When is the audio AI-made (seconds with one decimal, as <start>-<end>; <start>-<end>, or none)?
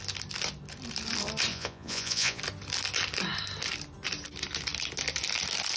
1.5-2.4